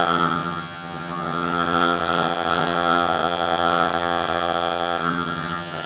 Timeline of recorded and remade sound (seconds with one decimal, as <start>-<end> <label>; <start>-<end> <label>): 0.0-5.9 remade